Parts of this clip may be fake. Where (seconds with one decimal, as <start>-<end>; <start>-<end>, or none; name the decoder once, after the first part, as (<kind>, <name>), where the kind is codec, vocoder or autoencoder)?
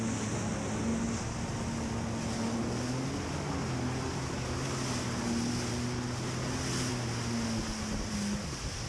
none